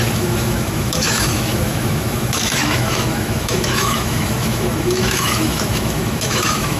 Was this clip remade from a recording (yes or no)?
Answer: yes